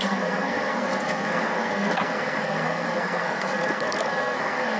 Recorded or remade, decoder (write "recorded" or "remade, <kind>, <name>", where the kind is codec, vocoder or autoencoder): remade, codec, SNAC